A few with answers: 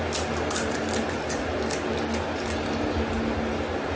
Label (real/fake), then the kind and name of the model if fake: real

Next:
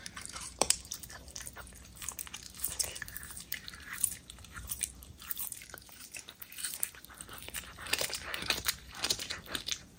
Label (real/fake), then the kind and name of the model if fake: fake, vocoder, BigVGAN v2